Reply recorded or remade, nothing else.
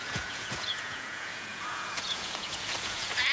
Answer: remade